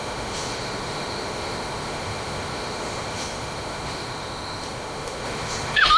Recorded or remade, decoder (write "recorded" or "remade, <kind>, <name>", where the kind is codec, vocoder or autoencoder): remade, autoencoder, DAC-VAE